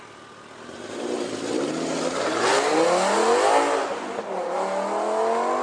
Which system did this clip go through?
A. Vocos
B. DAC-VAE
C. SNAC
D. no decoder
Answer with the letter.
D